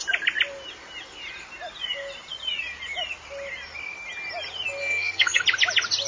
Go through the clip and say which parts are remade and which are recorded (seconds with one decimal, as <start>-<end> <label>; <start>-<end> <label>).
0.0-4.8 recorded; 4.8-5.4 remade; 5.4-6.1 recorded